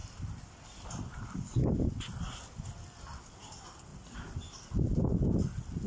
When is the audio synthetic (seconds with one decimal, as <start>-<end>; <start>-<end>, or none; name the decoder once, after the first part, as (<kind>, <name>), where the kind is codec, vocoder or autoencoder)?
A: none